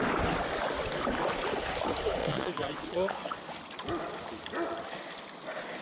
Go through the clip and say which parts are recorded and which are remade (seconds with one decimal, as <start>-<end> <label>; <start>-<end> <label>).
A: 0.0-2.2 recorded; 2.2-3.4 remade; 3.4-5.8 recorded